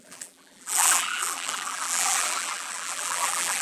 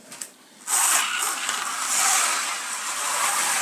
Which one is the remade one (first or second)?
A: first